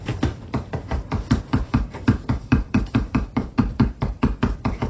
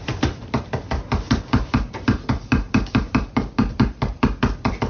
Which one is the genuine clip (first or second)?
second